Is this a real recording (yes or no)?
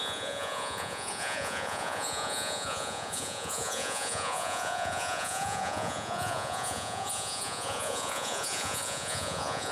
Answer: no